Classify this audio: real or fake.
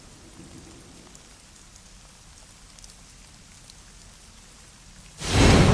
real